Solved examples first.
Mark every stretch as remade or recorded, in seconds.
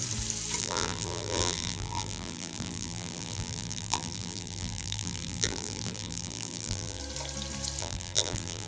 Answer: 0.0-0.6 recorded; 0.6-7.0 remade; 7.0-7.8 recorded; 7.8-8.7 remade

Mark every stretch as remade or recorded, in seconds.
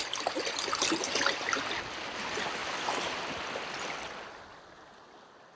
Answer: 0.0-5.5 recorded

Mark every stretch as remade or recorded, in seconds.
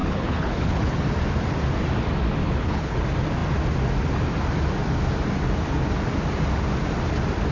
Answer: 0.0-1.0 remade; 1.0-2.4 recorded; 2.4-3.0 remade; 3.0-7.5 recorded